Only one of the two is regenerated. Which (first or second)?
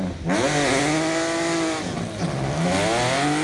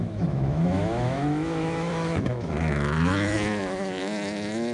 second